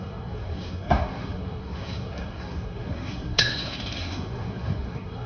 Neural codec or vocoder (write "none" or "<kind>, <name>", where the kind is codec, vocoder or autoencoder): codec, SNAC